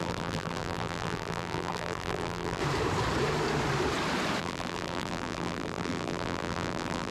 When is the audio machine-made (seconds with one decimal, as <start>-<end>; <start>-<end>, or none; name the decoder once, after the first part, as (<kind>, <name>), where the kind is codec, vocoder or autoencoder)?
0.0-2.6 (vocoder, BigVGAN v2); 4.4-7.1

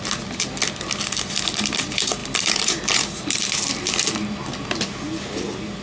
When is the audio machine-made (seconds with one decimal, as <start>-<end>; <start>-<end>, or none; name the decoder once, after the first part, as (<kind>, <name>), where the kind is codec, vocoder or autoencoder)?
2.2-3.7 (vocoder, BigVGAN v2)

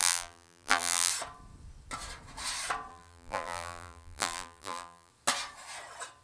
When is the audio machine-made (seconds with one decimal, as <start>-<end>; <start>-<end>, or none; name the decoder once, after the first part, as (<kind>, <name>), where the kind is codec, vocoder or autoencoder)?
0.0-1.1 (vocoder, BigVGAN v2); 2.9-5.1

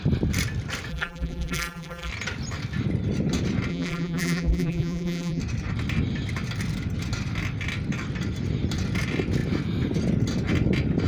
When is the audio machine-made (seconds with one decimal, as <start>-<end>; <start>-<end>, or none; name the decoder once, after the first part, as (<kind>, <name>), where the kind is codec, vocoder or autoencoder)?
0.9-2.1 (vocoder, BigVGAN v2); 3.7-5.4